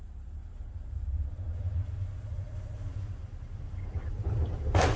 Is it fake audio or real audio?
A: fake